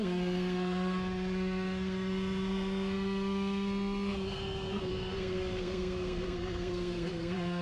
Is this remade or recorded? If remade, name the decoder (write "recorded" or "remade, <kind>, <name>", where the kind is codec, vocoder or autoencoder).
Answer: remade, codec, SNAC